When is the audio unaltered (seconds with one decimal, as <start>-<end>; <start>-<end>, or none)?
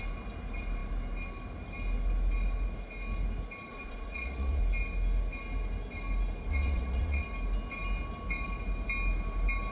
0.0-3.7; 4.6-6.5; 7.2-9.7